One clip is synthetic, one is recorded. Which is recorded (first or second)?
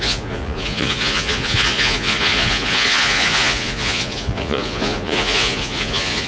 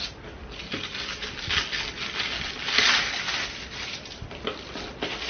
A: second